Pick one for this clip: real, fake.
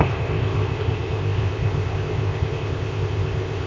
fake